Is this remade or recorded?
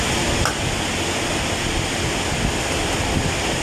recorded